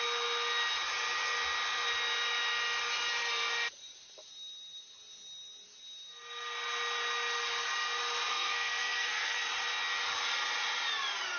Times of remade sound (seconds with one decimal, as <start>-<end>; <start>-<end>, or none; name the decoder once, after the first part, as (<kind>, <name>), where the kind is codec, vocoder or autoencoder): 8.3-9.4 (codec, SNAC)